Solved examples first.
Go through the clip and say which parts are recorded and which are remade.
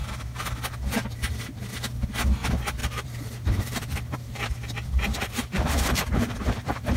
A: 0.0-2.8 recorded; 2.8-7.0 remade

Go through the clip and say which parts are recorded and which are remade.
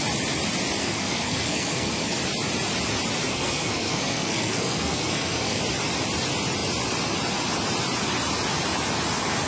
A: 0.0-0.8 recorded; 0.8-2.2 remade; 2.2-3.3 recorded; 3.3-5.6 remade; 5.6-9.5 recorded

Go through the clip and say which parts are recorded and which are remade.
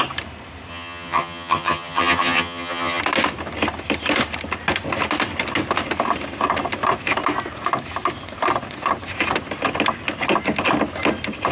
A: 0.0-0.7 recorded; 0.7-3.0 remade; 3.0-11.5 recorded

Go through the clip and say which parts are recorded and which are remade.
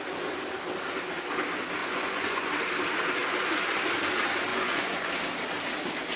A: 0.0-1.8 recorded; 1.8-2.5 remade; 2.5-4.5 recorded; 4.5-5.1 remade; 5.1-6.2 recorded